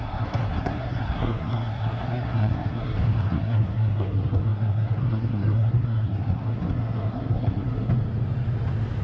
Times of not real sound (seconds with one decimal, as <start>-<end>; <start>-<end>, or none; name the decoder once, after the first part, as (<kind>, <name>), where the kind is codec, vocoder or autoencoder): 0.0-7.9 (codec, SNAC)